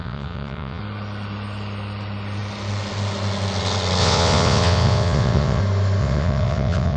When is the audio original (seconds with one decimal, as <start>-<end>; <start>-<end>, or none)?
0.8-4.0; 5.6-6.0